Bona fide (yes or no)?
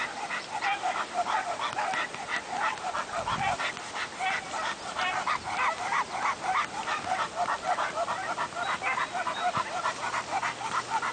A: yes